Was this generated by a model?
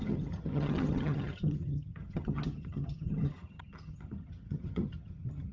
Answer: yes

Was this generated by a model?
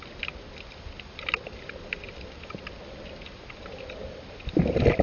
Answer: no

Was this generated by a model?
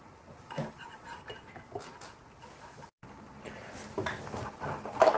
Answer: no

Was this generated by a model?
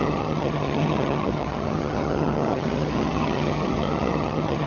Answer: yes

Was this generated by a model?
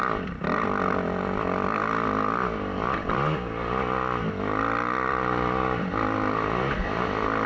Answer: no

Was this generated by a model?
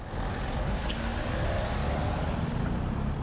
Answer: no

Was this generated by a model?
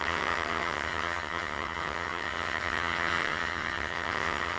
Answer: yes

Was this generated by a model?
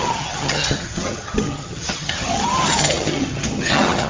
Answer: yes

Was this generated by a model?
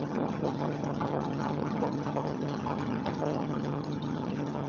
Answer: yes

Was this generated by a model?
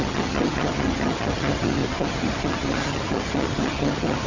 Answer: yes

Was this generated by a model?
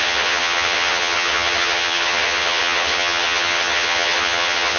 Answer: yes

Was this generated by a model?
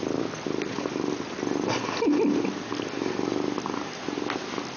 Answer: no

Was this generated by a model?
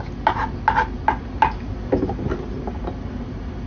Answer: no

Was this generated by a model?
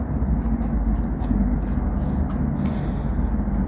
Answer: no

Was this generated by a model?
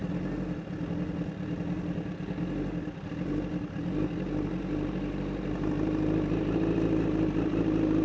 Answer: no